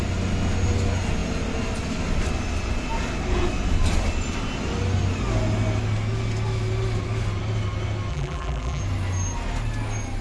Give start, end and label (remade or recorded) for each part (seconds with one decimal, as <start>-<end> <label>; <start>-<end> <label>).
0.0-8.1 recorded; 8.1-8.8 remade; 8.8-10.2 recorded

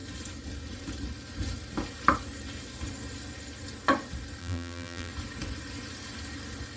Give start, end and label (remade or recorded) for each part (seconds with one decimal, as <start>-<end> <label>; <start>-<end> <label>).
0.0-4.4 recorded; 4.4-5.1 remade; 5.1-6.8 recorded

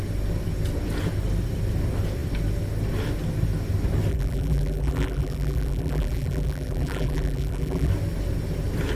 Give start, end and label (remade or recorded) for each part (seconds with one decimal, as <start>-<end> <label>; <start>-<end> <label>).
0.0-4.1 recorded; 4.1-7.9 remade; 7.9-9.0 recorded

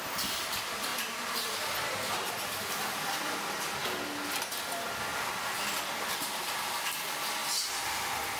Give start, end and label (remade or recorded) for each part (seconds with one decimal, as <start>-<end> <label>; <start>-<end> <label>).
0.0-7.4 recorded; 7.4-8.4 remade

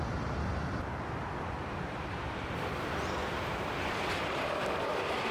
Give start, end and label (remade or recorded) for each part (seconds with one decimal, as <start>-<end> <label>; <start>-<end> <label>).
0.0-1.6 recorded; 1.6-4.8 remade; 4.8-5.3 recorded